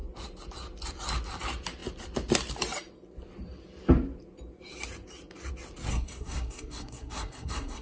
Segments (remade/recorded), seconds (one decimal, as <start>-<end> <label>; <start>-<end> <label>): 0.0-5.9 recorded; 5.9-7.8 remade